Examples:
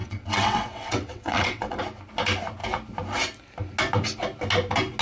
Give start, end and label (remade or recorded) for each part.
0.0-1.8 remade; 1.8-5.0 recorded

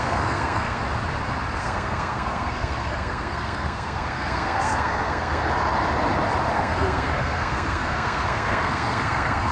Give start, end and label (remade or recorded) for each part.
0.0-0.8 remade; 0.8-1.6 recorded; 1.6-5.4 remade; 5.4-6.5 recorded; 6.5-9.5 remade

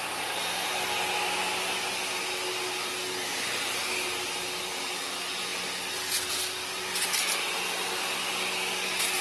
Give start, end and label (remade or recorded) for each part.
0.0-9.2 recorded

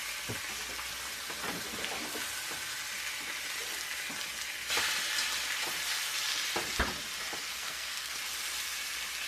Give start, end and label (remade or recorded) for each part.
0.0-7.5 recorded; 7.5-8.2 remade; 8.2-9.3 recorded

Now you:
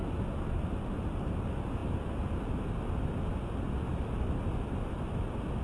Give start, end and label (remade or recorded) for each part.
0.0-5.6 recorded